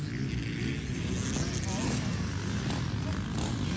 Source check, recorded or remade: recorded